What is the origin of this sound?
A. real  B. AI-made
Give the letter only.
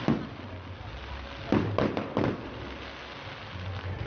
A